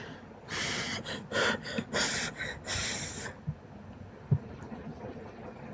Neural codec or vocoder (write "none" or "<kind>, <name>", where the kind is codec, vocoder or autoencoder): none